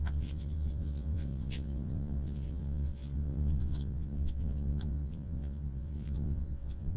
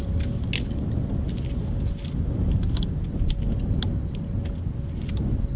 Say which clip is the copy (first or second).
first